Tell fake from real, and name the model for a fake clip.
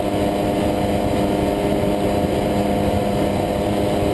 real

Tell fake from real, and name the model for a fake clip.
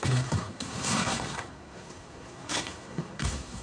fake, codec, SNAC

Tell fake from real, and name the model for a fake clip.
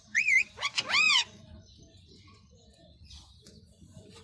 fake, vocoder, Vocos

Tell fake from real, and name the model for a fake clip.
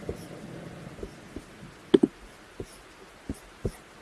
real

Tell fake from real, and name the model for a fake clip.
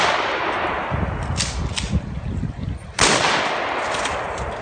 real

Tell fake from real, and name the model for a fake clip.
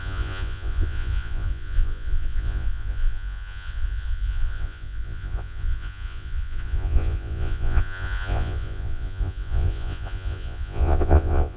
fake, vocoder, Vocos